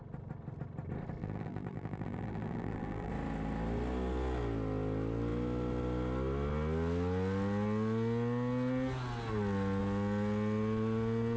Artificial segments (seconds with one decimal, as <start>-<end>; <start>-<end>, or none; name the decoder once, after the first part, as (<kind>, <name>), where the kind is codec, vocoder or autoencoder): 1.2-3.1 (vocoder, BigVGAN v2)